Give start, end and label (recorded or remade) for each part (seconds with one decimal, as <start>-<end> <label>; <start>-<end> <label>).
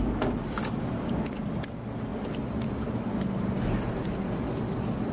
0.0-1.4 remade; 1.4-5.1 recorded